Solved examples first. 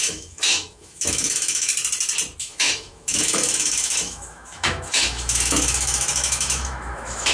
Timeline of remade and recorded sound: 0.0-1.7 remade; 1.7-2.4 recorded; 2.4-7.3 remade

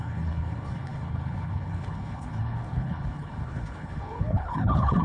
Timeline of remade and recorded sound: 0.0-5.0 remade

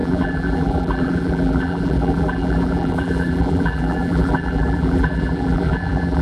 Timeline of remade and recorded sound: 0.0-6.2 remade

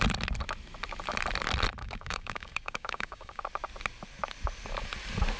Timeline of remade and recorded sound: 0.0-1.8 recorded; 1.8-3.4 remade; 3.4-5.4 recorded

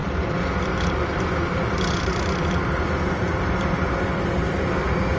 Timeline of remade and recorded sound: 0.0-5.2 recorded

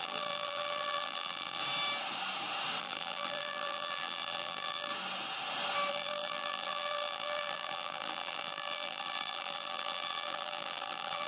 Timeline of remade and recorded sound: 0.0-1.6 remade; 1.6-2.8 recorded; 2.8-4.9 remade; 4.9-5.9 recorded; 5.9-11.3 remade

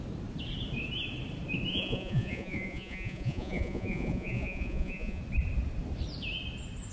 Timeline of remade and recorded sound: 0.0-1.7 recorded; 1.7-5.2 remade; 5.2-6.9 recorded